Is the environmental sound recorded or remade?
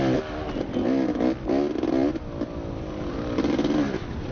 recorded